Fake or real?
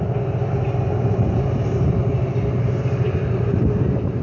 real